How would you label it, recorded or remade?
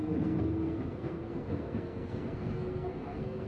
remade